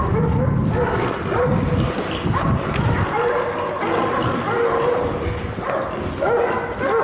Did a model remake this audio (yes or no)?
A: no